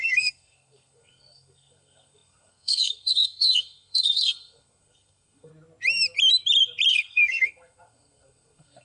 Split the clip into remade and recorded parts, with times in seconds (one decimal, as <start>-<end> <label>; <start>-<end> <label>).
0.0-5.5 remade; 5.5-6.9 recorded; 6.9-8.8 remade